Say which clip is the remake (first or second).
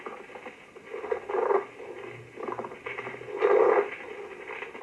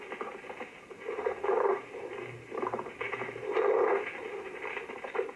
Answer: second